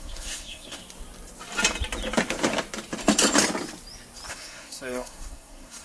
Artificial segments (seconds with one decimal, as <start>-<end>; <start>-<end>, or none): 0.0-0.8; 4.3-5.8